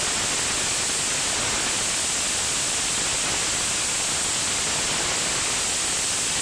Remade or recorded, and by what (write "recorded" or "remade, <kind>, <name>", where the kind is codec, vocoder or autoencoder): recorded